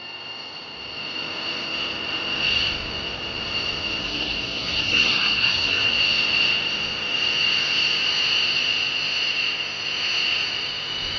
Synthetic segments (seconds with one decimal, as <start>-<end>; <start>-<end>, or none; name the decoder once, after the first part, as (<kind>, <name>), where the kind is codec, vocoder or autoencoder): 4.0-6.0 (codec, SNAC)

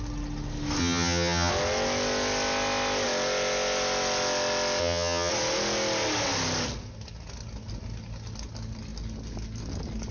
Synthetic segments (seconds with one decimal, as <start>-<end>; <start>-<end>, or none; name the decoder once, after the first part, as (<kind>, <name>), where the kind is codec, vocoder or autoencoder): 0.8-1.5 (vocoder, HiFi-GAN); 4.8-5.3

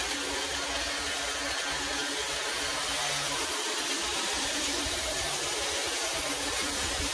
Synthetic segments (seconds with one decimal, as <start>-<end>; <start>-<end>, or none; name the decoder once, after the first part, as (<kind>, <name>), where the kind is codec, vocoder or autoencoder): 4.1-5.3 (vocoder, BigVGAN v2)

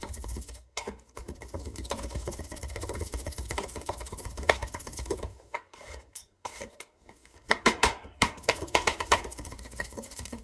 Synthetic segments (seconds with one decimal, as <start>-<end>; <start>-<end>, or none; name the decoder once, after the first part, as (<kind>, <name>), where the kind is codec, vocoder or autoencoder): 0.0-10.4 (codec, SNAC)

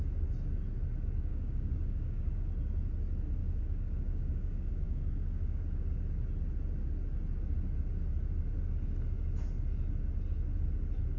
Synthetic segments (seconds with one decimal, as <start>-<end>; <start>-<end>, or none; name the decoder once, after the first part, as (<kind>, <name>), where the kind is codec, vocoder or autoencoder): 1.3-2.5 (codec, DAC); 3.4-6.0